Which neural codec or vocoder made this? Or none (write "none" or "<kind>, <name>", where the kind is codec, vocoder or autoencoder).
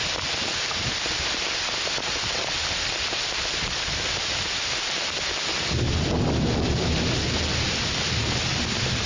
none